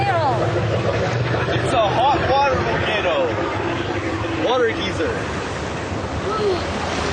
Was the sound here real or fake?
real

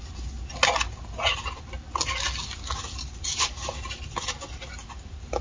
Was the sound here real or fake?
real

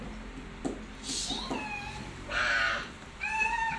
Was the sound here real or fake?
real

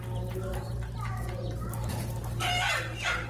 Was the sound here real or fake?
real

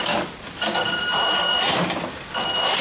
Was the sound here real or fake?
real